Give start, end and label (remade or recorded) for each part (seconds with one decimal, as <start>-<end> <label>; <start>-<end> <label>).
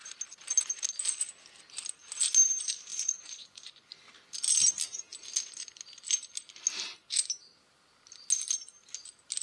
0.0-2.9 recorded; 2.9-3.9 remade; 3.9-9.4 recorded